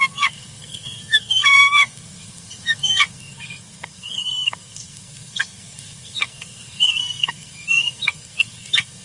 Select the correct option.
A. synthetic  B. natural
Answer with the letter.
A